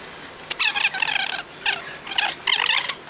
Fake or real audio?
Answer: real